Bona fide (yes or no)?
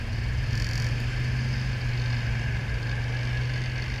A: yes